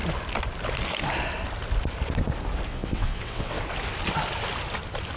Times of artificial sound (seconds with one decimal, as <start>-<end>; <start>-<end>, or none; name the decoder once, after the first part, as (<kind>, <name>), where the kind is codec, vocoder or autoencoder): 2.7-3.6 (vocoder, WaveNeXt)